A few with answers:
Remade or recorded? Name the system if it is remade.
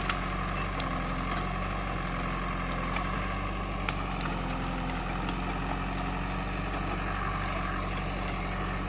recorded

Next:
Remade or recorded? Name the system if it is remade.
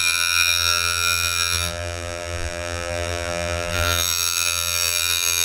remade, vocoder, BigVGAN v2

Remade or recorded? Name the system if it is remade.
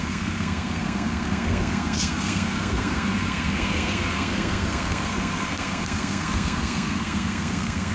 remade, codec, SNAC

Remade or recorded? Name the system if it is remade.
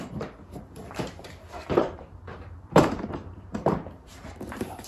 remade, vocoder, BigVGAN v2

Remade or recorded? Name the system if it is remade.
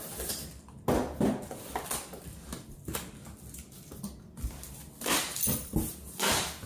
recorded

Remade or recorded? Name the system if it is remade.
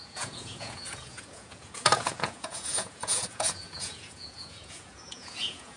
remade, vocoder, Vocos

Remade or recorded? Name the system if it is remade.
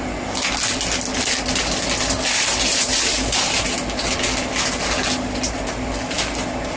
recorded